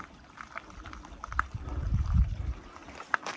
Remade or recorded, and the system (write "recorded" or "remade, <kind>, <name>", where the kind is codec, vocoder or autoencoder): recorded